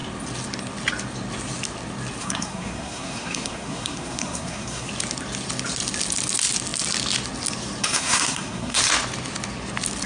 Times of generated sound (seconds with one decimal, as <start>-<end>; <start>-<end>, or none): 2.2-4.9; 7.8-8.8